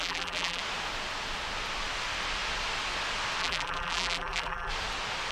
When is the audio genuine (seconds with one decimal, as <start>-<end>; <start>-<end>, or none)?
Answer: 0.6-3.4; 4.7-5.3

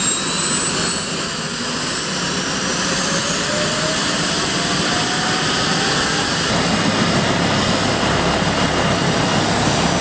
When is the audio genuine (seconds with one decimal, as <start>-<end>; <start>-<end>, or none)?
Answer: 0.0-10.0

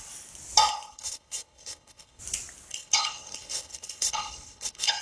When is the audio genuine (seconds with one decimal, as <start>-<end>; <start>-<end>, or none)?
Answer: 0.0-0.7; 2.2-2.7

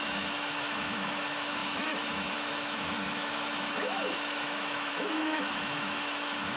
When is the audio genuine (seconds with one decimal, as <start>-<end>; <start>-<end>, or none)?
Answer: none

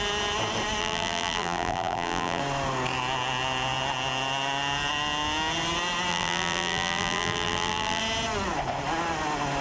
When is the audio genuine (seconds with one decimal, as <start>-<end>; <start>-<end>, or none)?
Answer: 0.0-0.8; 2.4-6.1; 8.0-9.6